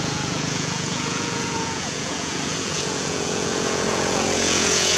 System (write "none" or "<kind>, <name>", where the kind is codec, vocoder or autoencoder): vocoder, Vocos